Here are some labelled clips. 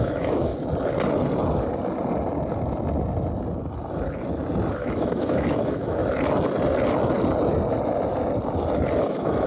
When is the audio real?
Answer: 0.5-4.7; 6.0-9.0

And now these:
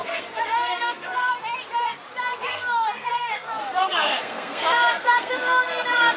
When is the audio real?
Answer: 1.3-2.5

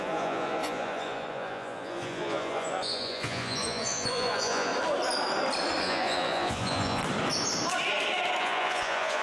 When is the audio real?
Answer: 4.7-5.8; 7.0-8.4

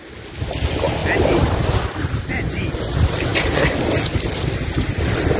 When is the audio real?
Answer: 0.0-5.4

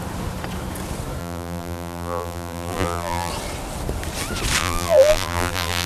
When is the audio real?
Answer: 0.0-1.2; 3.3-4.6

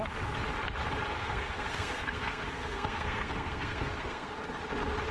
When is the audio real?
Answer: 0.0-1.2; 4.3-5.1

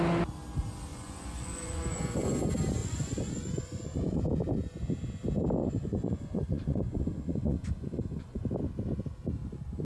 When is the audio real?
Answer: 0.0-0.9; 2.4-2.8; 4.2-5.6; 8.4-9.8

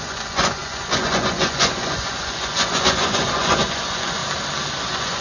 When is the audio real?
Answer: 4.2-4.8